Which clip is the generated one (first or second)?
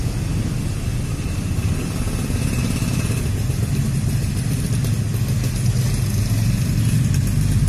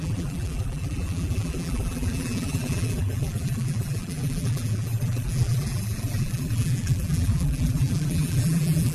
second